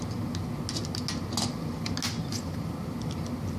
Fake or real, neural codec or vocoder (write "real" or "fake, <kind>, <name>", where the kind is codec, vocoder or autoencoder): real